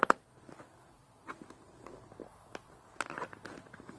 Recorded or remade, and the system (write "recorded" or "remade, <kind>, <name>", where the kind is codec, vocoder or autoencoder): recorded